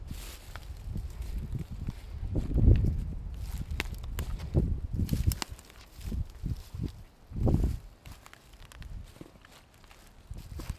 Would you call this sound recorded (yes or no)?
yes